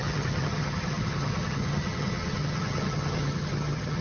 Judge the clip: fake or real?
fake